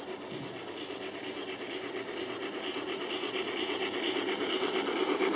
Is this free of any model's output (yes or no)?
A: yes